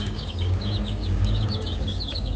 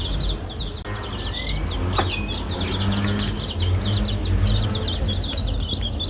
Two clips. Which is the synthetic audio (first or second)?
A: first